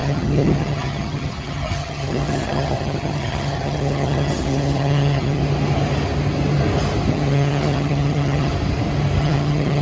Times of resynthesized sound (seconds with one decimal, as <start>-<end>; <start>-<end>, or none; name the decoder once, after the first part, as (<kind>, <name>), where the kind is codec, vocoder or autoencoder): 0.0-5.4 (vocoder, HiFi-GAN); 7.1-8.5; 9.2-9.8